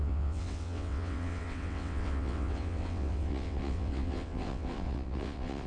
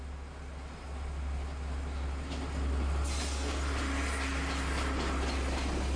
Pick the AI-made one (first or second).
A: first